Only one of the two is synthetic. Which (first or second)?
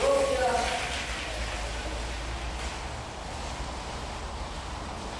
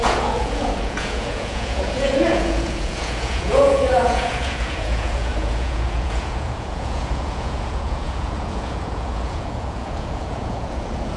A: second